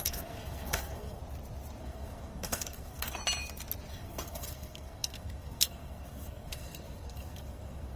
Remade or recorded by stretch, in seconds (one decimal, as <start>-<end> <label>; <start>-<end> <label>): 0.0-1.2 remade; 1.2-1.8 recorded; 1.8-3.2 remade; 3.2-3.9 recorded; 3.9-8.0 remade